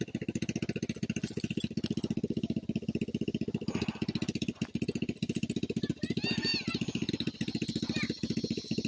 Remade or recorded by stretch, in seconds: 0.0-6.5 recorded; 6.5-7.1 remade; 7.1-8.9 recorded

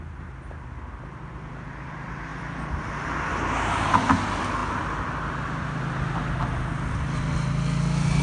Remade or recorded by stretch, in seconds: 0.0-8.2 recorded

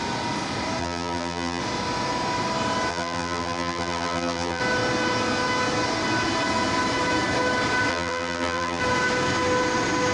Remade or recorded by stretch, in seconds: 0.0-0.8 recorded; 0.8-1.6 remade; 1.6-2.9 recorded; 2.9-4.6 remade; 4.6-7.9 recorded; 7.9-8.8 remade; 8.8-10.1 recorded

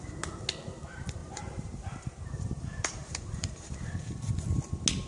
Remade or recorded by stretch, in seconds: 0.0-1.2 recorded; 1.2-4.3 remade; 4.3-5.1 recorded

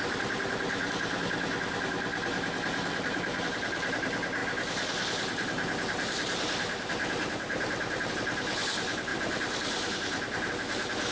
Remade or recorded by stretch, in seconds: 0.0-9.1 recorded; 9.1-10.5 remade; 10.5-11.1 recorded

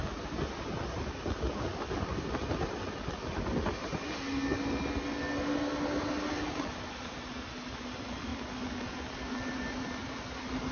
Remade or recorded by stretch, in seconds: 0.0-10.7 recorded

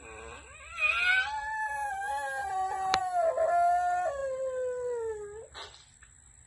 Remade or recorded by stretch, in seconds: 0.0-2.4 recorded; 2.4-3.0 remade; 3.0-6.5 recorded

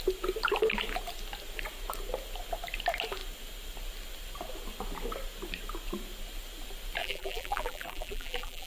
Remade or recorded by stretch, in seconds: 0.0-7.0 recorded; 7.0-8.7 remade